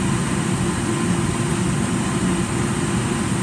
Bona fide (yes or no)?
yes